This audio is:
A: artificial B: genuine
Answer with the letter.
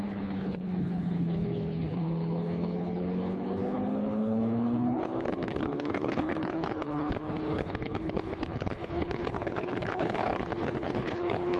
A